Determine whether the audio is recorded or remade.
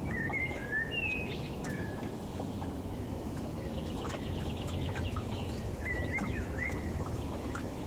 remade